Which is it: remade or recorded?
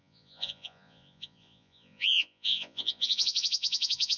remade